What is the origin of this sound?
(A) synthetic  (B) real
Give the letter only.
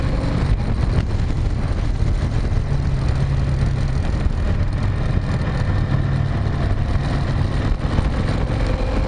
B